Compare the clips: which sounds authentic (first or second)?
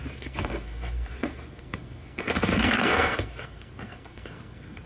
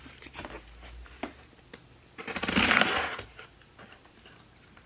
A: second